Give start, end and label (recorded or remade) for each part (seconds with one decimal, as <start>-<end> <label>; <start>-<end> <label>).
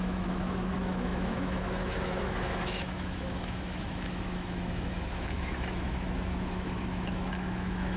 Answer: 0.0-8.0 remade